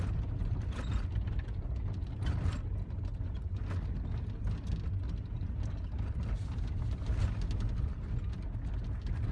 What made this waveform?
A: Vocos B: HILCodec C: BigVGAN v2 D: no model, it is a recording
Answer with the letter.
D